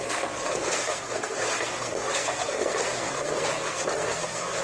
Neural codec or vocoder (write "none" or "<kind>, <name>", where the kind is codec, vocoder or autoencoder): codec, SNAC